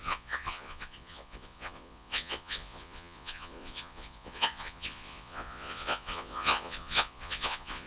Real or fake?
fake